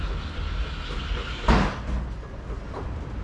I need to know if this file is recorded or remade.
recorded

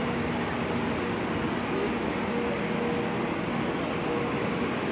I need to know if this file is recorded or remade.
recorded